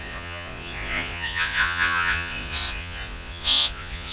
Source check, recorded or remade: remade